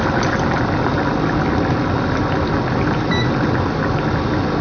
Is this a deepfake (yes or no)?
no